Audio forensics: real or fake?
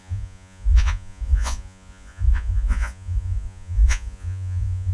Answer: fake